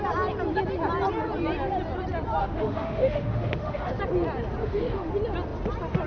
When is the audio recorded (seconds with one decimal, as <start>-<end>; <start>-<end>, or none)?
0.0-2.4; 3.9-4.6; 5.1-6.1